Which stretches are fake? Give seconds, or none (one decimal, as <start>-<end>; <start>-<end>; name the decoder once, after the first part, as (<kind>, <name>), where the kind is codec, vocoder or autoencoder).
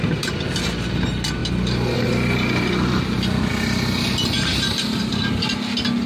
4.5-5.1 (vocoder, BigVGAN v2)